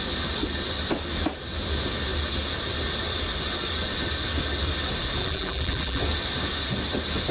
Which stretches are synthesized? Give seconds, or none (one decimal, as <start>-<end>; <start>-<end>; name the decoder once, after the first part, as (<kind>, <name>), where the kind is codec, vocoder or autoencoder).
5.2-6.0 (vocoder, BigVGAN v2)